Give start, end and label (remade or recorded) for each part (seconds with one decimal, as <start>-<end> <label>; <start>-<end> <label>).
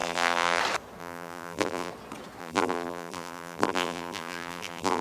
0.0-0.6 remade; 0.6-1.0 recorded; 1.0-1.9 remade; 1.9-2.4 recorded; 2.4-5.0 remade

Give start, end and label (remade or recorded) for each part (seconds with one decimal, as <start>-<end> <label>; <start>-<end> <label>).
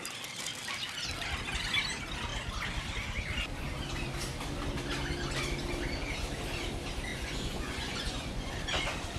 0.0-7.1 recorded; 7.1-8.5 remade; 8.5-9.2 recorded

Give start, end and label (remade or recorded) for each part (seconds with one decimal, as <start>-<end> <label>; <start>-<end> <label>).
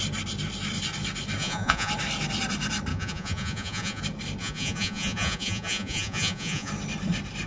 0.0-1.4 recorded; 1.4-1.9 remade; 1.9-2.9 recorded; 2.9-4.0 remade; 4.0-4.4 recorded; 4.4-6.7 remade; 6.7-7.5 recorded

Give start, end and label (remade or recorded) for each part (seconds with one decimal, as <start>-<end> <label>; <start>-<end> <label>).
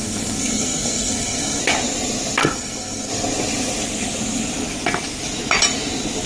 0.0-1.6 remade; 1.6-2.4 recorded; 2.4-3.1 remade; 3.1-6.3 recorded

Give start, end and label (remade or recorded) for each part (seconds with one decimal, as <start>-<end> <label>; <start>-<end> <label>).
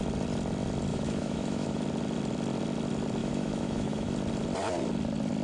0.0-0.9 recorded; 0.9-1.8 remade; 1.8-3.2 recorded; 3.2-4.1 remade; 4.1-5.4 recorded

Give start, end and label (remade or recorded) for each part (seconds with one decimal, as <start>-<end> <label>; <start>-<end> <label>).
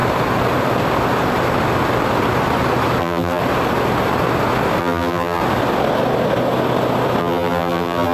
0.0-3.0 recorded; 3.0-3.4 remade; 3.4-4.8 recorded; 4.8-5.4 remade; 5.4-7.2 recorded; 7.2-8.1 remade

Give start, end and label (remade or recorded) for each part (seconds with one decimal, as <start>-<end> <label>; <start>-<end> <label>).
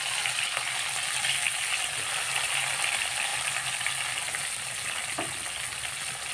0.0-6.3 recorded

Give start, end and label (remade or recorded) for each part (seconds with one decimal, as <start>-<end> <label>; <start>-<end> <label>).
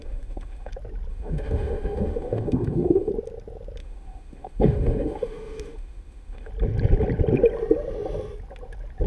0.0-0.7 remade; 0.7-1.1 recorded; 1.1-3.1 remade; 3.1-3.8 recorded; 3.8-6.5 remade; 6.5-9.1 recorded